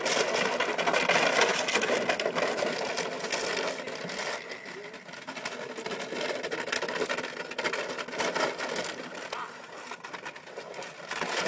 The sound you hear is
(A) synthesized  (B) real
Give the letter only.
B